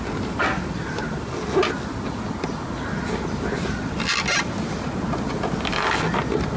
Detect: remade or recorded recorded